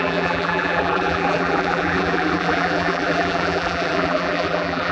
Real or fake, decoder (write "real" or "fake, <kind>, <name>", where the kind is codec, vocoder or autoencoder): fake, vocoder, BigVGAN v2